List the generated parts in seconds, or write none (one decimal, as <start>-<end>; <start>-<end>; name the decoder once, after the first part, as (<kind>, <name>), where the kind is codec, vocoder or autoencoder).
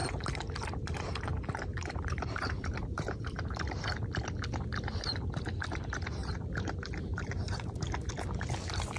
0.0-3.8 (vocoder, BigVGAN v2); 6.2-8.0